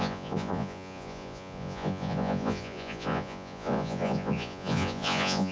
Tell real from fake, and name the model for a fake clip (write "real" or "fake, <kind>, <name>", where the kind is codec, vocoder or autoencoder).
fake, vocoder, Vocos